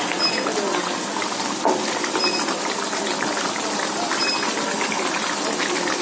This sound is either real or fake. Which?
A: real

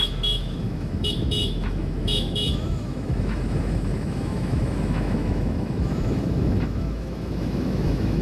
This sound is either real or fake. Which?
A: fake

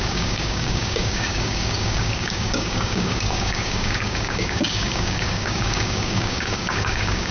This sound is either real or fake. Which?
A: fake